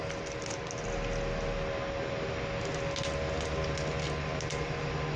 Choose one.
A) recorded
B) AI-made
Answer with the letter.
A